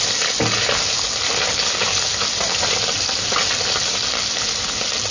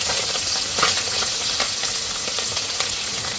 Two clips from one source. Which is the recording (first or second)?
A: first